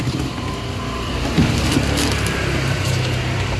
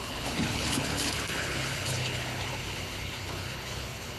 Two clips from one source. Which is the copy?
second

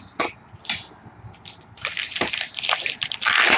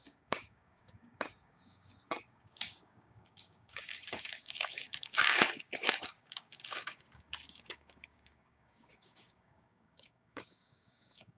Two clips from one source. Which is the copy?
second